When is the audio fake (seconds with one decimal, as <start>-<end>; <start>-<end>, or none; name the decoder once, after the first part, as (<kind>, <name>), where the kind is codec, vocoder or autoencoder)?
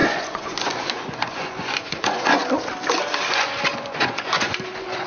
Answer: 0.0-2.4 (vocoder, Vocos); 3.3-5.1